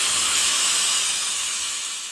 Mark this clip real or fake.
fake